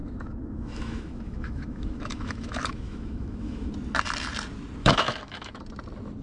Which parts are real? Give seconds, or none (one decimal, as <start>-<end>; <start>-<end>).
3.7-4.8; 5.6-6.2